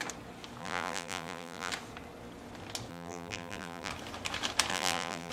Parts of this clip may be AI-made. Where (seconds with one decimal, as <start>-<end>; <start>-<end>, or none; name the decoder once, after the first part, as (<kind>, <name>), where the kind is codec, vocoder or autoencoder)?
0.6-1.7 (vocoder, BigVGAN v2); 2.9-3.9; 4.7-5.3